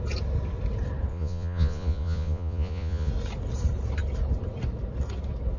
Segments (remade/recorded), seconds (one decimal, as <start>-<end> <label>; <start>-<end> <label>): 0.0-1.1 recorded; 1.1-3.1 remade; 3.1-5.6 recorded